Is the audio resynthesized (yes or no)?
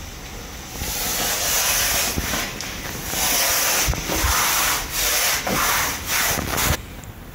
no